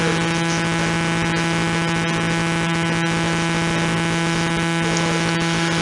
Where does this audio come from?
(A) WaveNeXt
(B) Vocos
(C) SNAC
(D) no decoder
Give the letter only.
D